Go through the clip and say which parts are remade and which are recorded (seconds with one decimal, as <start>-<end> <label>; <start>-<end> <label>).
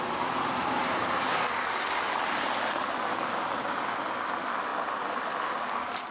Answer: 0.0-6.1 recorded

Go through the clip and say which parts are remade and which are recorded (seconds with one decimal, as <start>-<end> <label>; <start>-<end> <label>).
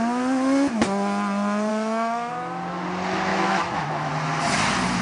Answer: 0.0-1.7 recorded; 1.7-2.3 remade; 2.3-3.3 recorded; 3.3-4.1 remade; 4.1-5.0 recorded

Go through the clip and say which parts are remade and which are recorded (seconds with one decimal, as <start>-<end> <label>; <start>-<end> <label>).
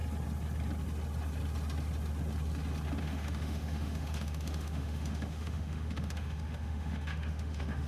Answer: 0.0-3.0 recorded; 3.0-7.9 remade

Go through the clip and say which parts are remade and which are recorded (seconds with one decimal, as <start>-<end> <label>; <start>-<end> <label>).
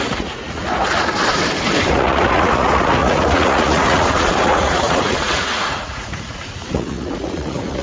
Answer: 0.0-0.6 remade; 0.6-1.9 recorded; 1.9-7.8 remade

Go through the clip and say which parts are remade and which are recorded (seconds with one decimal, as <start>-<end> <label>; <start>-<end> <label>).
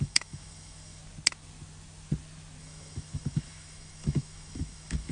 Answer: 0.0-1.0 remade; 1.0-2.6 recorded; 2.6-5.1 remade